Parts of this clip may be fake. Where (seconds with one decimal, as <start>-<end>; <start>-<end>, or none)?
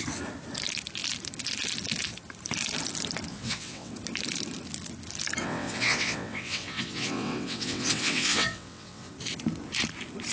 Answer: 3.3-3.9; 5.4-9.1